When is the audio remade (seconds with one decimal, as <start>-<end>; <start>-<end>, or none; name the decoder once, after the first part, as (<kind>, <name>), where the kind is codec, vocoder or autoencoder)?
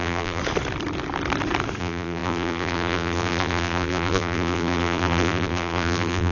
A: 0.0-0.4 (vocoder, BigVGAN v2); 1.8-6.3